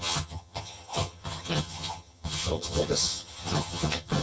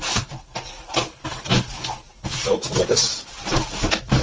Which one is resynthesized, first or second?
first